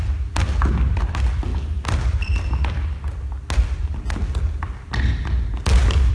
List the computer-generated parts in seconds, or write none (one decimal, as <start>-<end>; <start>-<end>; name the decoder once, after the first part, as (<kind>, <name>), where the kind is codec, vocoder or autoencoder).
none